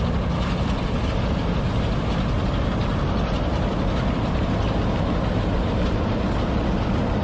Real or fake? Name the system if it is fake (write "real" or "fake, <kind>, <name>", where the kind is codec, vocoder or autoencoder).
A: real